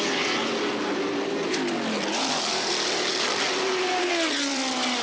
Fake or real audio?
fake